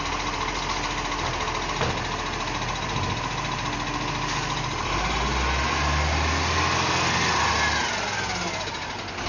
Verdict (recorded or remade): recorded